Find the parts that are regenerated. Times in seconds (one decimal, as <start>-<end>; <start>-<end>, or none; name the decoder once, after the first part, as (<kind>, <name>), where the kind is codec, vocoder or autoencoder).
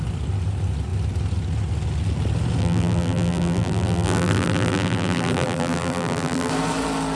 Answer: 2.6-6.5 (vocoder, BigVGAN v2)